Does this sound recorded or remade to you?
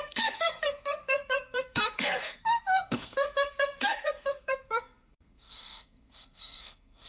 remade